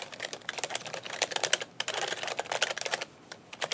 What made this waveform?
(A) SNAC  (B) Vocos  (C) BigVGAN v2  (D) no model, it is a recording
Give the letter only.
C